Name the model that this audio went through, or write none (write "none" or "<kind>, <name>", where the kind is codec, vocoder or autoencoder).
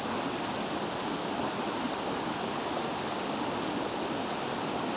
none